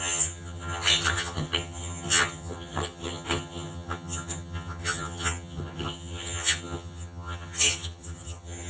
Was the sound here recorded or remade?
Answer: remade